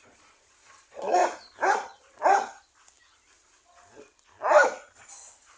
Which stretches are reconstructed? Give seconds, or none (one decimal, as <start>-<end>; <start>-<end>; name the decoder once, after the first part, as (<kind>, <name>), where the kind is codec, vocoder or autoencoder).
0.0-1.2 (vocoder, Vocos); 1.7-2.2